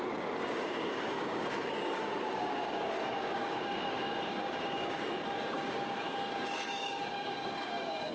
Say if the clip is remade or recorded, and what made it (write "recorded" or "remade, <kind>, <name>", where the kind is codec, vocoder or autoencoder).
remade, codec, DAC